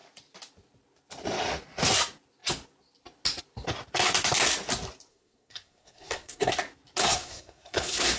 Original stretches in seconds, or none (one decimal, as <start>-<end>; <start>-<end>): 0.0-5.1; 6.5-7.0